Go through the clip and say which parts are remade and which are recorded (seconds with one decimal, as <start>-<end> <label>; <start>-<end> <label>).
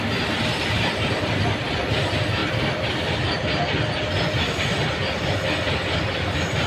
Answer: 0.0-0.5 recorded; 0.5-1.3 remade; 1.3-6.7 recorded